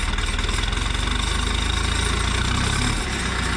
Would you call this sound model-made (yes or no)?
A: no